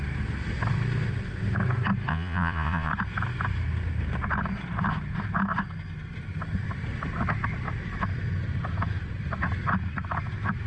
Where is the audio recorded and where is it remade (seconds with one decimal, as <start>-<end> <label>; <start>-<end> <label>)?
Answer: 0.0-2.1 recorded; 2.1-2.9 remade; 2.9-10.7 recorded